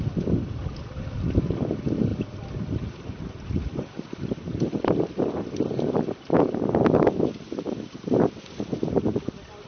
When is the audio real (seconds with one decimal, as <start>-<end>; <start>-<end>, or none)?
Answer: 0.0-9.7